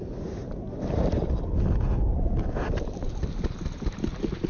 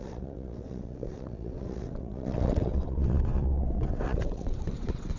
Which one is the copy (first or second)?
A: second